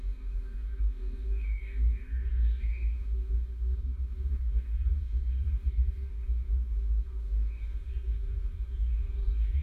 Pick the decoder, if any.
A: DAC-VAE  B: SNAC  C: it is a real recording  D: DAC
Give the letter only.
D